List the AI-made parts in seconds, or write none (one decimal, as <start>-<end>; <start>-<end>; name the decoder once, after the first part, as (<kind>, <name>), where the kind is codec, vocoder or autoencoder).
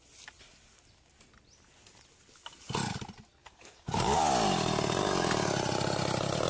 3.4-4.3 (codec, DAC)